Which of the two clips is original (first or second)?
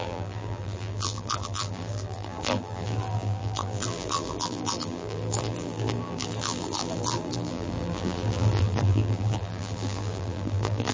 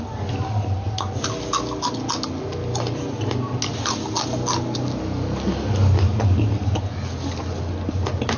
second